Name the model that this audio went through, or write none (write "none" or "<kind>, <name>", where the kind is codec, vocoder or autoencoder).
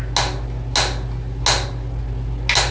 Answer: none